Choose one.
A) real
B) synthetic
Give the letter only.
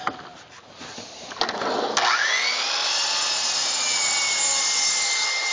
A